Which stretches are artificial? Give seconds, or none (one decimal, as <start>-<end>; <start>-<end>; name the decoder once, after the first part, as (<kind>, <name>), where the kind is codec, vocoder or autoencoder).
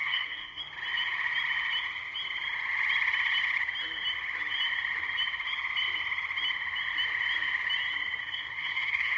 0.0-0.6 (codec, SNAC); 8.2-9.2